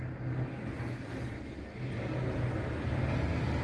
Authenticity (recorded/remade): recorded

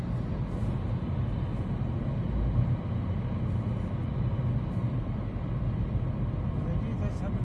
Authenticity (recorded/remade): recorded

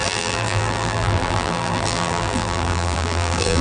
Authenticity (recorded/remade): remade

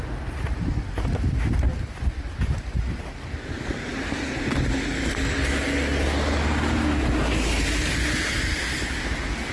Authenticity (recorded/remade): recorded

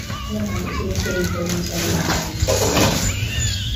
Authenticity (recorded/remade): recorded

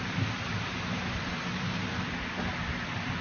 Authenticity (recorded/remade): remade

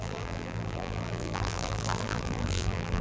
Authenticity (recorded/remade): remade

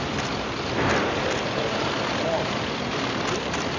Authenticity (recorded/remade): remade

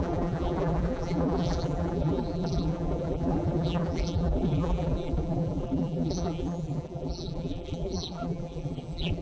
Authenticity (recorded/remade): remade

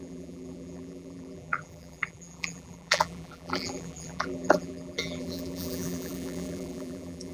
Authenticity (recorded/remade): remade